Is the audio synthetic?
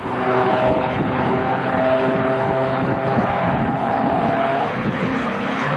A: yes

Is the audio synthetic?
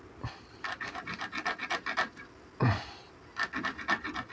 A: no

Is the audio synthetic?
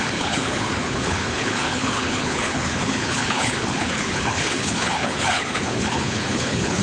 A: yes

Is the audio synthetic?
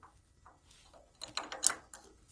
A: no